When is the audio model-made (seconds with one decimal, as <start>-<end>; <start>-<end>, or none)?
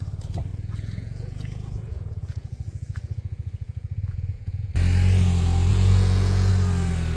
0.5-4.7; 5.7-6.5